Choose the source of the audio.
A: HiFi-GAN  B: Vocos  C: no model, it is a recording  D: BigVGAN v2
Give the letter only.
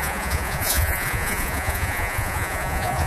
B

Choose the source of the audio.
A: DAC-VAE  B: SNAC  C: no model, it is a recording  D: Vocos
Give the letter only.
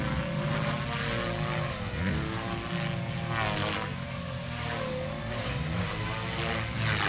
C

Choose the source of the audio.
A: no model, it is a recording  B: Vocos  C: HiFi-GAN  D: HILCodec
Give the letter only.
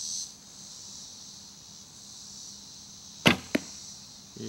A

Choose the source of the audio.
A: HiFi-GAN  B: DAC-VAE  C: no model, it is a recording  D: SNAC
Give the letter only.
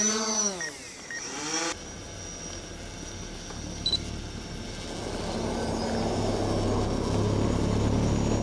C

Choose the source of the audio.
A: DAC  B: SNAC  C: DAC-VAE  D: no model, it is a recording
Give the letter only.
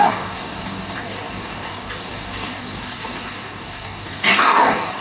A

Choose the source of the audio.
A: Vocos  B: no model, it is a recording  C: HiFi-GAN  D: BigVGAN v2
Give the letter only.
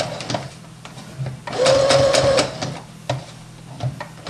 B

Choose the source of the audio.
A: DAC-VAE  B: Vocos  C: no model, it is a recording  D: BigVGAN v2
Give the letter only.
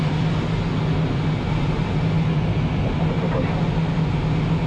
C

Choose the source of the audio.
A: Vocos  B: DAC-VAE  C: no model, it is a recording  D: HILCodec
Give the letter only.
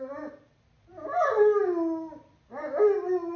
C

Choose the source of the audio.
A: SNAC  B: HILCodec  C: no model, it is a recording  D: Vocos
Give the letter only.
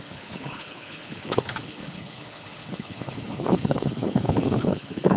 B